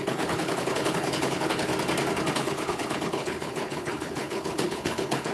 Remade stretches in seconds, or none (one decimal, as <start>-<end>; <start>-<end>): 0.0-1.7; 2.3-5.3